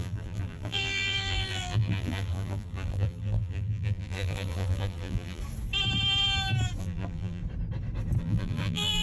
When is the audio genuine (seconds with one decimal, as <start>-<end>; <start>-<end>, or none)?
5.4-6.8; 7.4-8.2